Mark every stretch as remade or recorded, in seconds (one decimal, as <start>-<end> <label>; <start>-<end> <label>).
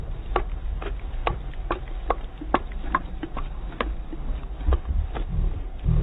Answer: 0.0-1.2 remade; 1.2-4.8 recorded; 4.8-6.0 remade